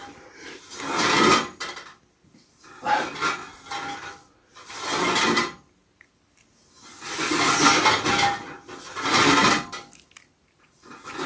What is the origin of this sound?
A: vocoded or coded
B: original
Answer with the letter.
B